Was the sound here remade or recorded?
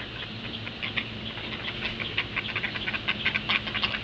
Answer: recorded